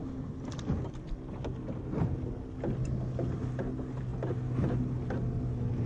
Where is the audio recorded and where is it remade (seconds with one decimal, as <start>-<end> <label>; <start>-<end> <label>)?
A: 0.0-5.9 recorded